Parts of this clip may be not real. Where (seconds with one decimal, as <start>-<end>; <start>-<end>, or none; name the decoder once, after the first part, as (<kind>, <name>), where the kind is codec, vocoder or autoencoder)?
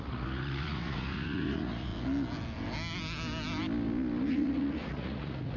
0.0-1.9 (vocoder, Vocos); 4.3-5.6